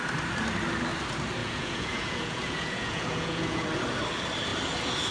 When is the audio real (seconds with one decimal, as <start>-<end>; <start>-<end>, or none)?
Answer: 0.0-1.4; 3.6-5.1